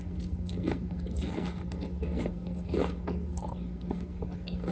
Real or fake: fake